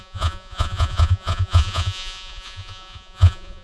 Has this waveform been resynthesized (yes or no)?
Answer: yes